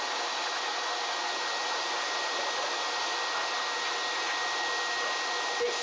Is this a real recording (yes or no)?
yes